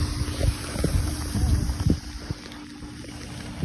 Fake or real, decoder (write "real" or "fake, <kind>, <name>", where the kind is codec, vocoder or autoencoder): real